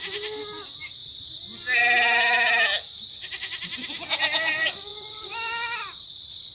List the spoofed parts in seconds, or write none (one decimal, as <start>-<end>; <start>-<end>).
none